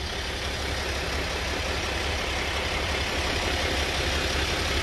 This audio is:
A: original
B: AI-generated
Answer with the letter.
A